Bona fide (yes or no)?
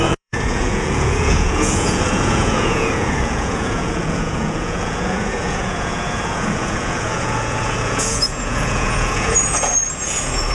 no